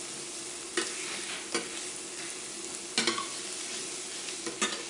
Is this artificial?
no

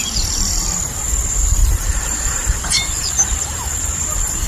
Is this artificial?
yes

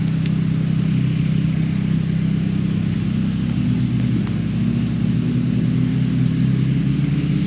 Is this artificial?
no